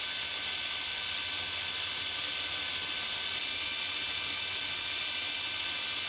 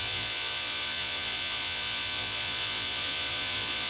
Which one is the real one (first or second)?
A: first